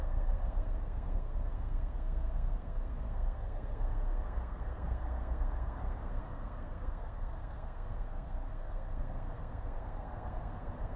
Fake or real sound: fake